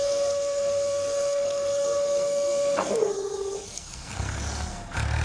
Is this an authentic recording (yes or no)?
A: no